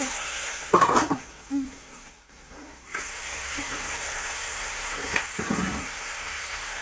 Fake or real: fake